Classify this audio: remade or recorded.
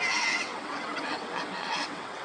remade